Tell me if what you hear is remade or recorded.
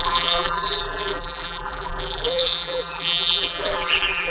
remade